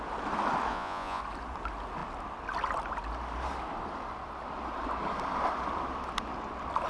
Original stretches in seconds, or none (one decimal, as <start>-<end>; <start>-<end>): 0.0-0.7; 1.2-6.9